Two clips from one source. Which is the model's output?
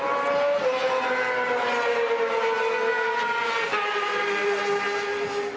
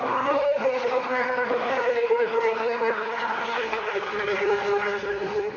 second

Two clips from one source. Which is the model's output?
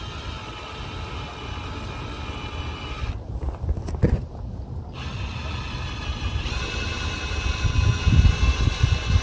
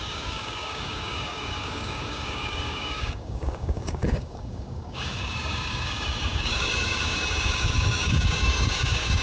second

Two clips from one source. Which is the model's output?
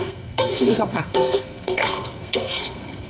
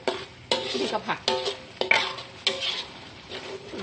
first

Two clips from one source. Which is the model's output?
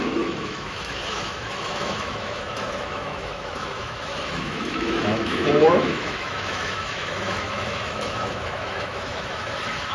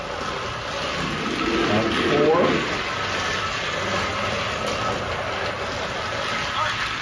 first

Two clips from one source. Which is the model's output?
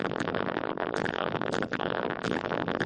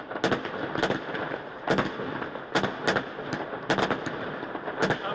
first